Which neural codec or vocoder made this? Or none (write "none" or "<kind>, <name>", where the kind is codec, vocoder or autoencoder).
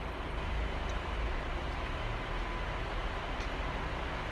none